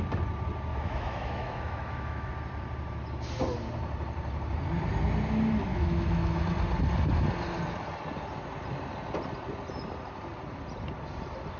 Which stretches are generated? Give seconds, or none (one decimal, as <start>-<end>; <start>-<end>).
0.7-2.3; 5.7-6.4